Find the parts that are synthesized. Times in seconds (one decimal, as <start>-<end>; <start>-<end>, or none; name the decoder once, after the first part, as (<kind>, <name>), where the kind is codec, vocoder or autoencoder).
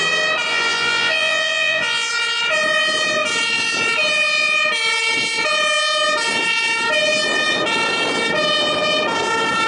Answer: 0.5-2.1 (vocoder, Vocos)